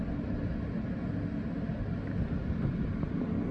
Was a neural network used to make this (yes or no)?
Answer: no